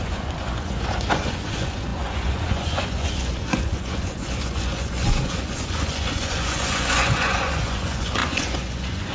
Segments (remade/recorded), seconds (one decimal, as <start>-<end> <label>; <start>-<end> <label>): 0.0-9.1 remade